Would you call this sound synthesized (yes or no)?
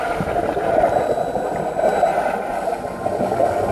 no